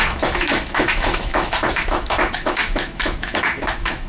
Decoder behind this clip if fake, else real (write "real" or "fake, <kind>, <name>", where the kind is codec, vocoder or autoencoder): fake, autoencoder, DAC-VAE